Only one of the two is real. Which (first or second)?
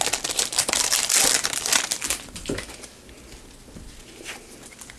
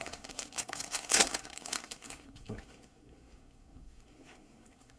first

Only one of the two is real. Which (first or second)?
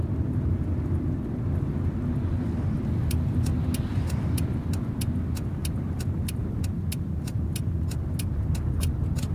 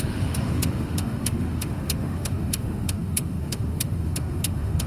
first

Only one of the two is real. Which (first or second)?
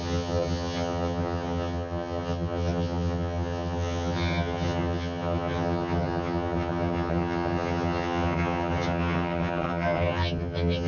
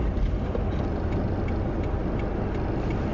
second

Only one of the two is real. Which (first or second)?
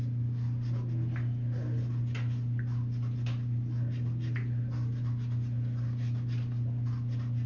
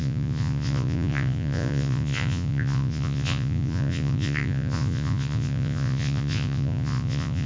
first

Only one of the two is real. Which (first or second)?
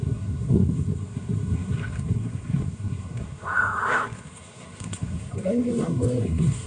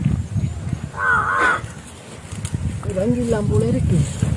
second